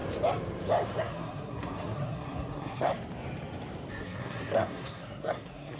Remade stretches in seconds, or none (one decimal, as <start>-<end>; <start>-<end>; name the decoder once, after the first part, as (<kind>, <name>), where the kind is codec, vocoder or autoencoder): 1.0-2.9 (codec, SNAC); 3.9-5.8